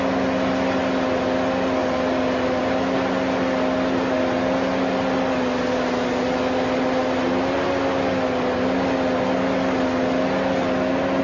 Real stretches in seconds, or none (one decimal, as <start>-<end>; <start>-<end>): 0.0-11.2